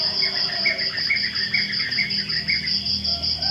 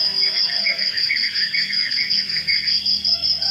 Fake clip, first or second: second